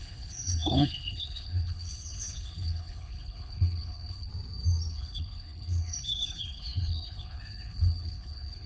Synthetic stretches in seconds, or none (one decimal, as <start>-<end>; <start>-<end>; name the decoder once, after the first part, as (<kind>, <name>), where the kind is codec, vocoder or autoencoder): 0.0-4.3 (codec, HILCodec); 4.9-8.7